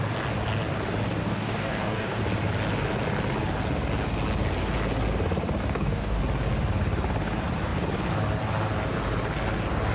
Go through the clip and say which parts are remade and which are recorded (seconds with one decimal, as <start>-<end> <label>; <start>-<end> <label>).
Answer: 0.0-1.2 recorded; 1.2-2.2 remade; 2.2-5.6 recorded; 5.6-6.2 remade; 6.2-9.9 recorded